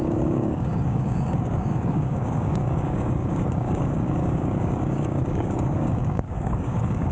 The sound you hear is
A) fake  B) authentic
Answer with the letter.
A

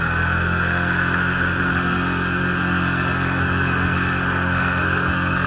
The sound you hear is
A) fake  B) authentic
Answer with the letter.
A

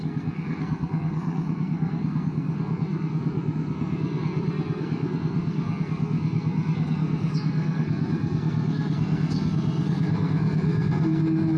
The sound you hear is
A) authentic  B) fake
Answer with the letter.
B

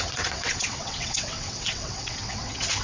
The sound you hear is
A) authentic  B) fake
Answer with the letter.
B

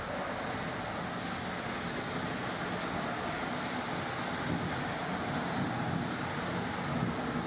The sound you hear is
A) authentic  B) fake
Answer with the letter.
A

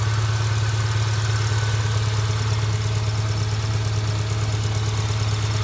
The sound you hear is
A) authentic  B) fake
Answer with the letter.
A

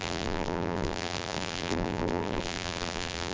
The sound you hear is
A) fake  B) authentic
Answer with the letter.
A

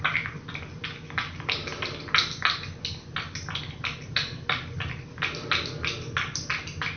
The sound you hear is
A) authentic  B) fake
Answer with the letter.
A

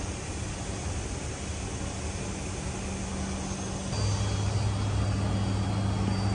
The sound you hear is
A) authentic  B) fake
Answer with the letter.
A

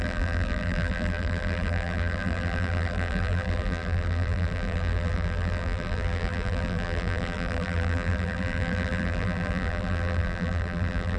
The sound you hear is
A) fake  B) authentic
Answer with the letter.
A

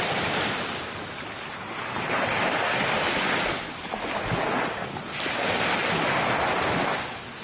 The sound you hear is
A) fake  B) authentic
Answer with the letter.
B